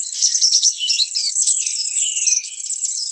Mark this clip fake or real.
fake